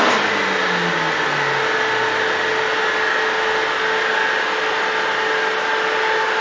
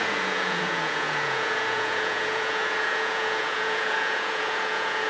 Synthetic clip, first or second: second